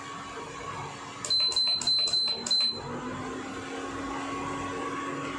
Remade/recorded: recorded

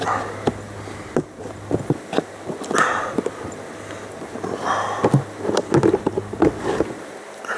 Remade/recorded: recorded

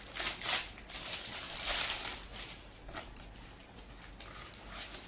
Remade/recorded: recorded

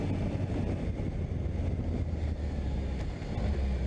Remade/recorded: recorded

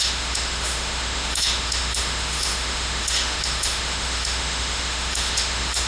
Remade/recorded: remade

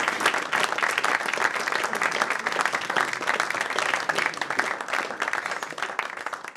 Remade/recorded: recorded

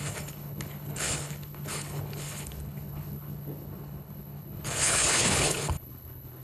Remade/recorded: remade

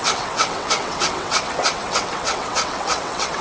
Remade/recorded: remade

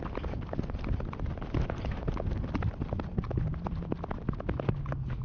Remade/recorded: recorded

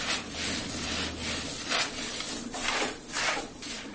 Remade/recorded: recorded